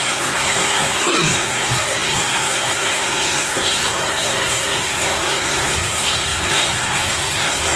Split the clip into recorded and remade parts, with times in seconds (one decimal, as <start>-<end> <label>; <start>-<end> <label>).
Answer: 0.0-7.8 remade